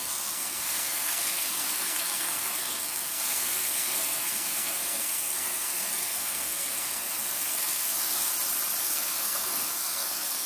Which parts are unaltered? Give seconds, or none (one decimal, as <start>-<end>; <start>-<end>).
8.3-8.8